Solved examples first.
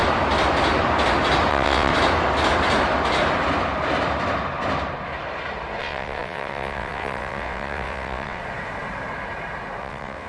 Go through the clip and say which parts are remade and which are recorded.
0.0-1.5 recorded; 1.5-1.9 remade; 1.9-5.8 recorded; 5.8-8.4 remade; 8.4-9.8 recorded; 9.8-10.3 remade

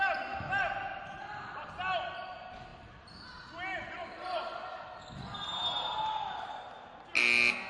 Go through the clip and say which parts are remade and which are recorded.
0.0-7.7 recorded

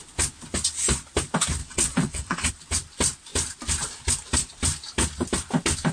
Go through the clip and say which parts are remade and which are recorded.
0.0-1.6 recorded; 1.6-2.5 remade; 2.5-5.9 recorded

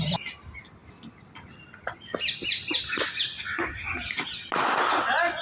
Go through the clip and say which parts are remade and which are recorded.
0.0-5.4 recorded

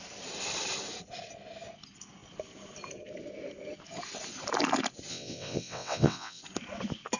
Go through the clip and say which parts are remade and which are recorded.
0.0-5.1 recorded; 5.1-6.4 remade; 6.4-7.2 recorded

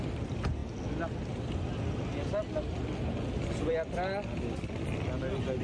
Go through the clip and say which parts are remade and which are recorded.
0.0-5.6 recorded

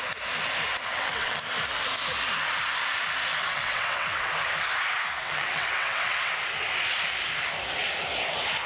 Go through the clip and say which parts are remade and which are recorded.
0.0-0.9 recorded; 0.9-1.4 remade; 1.4-3.4 recorded; 3.4-4.3 remade; 4.3-5.2 recorded; 5.2-6.3 remade; 6.3-8.7 recorded